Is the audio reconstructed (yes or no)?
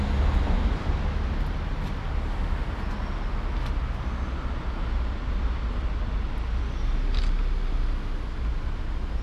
no